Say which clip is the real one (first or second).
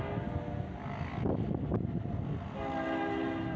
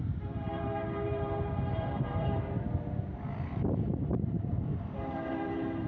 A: first